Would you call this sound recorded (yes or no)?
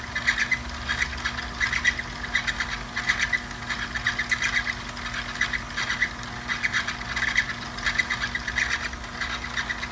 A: yes